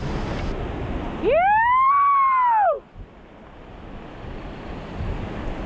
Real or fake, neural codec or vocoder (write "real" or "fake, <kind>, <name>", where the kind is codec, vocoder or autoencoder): real